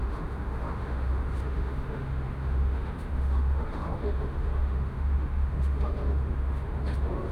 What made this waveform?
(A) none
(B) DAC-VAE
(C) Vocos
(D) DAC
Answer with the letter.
B